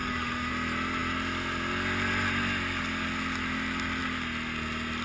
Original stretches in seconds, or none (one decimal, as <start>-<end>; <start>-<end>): 0.5-5.0

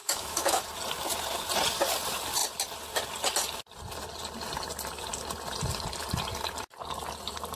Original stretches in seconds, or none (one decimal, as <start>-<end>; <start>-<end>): 0.6-7.6

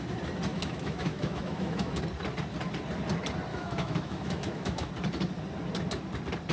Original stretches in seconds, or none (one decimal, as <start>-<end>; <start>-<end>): 0.0-0.5; 2.0-3.5; 4.9-6.5

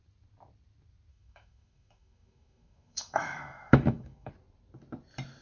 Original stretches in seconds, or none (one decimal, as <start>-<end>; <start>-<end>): 0.0-1.1; 4.3-5.4

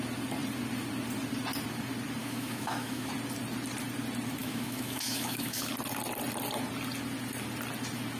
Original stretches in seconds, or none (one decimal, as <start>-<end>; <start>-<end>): 0.0-2.2; 3.1-4.4; 5.7-8.2

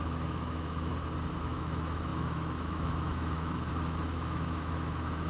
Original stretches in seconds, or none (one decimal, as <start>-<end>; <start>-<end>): 0.9-1.4